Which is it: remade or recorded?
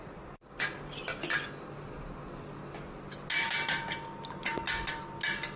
recorded